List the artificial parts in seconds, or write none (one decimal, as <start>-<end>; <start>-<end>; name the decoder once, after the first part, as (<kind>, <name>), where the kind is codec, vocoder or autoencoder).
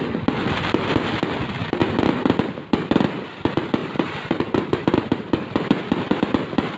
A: 3.8-5.3 (vocoder, BigVGAN v2)